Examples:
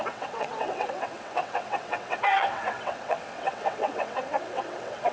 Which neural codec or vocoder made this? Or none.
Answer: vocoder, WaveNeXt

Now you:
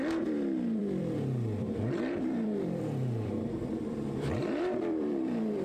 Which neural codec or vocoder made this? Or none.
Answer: vocoder, BigVGAN v2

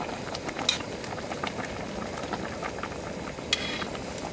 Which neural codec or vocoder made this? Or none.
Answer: none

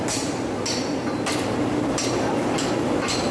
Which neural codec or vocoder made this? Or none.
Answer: none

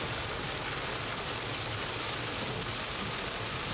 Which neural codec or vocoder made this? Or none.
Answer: none